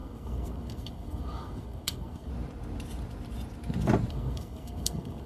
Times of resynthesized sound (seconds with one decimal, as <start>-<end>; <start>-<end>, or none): 0.0-2.3; 4.1-5.3